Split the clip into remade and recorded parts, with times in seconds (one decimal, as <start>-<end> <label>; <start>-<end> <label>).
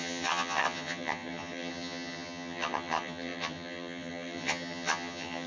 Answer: 0.0-5.5 remade